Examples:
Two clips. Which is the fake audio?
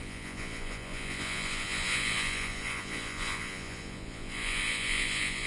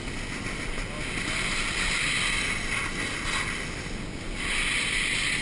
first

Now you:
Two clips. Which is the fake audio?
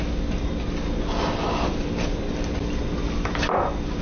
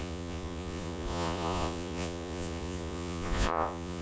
second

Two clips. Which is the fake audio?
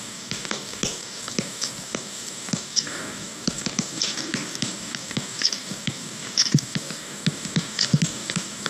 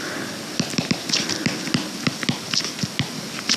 first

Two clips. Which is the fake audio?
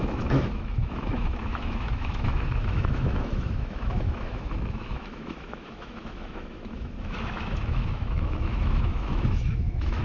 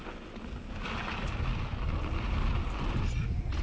first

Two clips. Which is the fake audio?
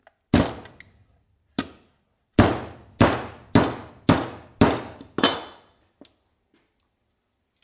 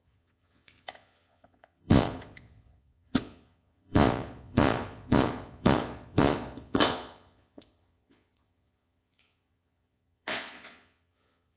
second